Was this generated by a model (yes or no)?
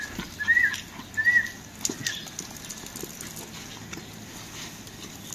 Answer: no